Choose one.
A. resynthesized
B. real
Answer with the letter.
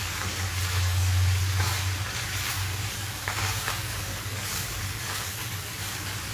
A